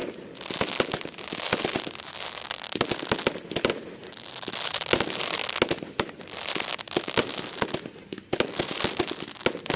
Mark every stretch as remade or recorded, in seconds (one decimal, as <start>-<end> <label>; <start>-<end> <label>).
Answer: 0.0-9.8 recorded